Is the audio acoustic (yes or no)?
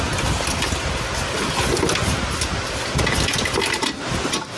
yes